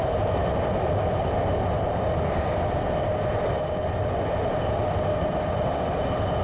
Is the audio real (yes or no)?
yes